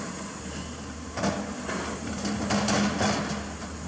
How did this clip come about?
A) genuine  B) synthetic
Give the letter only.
A